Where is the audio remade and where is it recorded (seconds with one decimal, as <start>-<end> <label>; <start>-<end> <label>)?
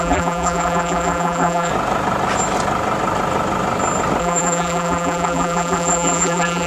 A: 0.0-1.7 remade; 1.7-4.2 recorded; 4.2-6.7 remade